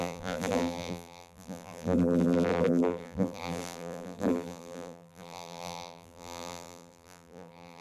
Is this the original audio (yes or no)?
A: no